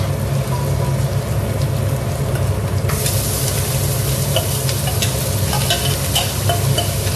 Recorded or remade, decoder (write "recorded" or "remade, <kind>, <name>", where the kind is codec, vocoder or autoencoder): recorded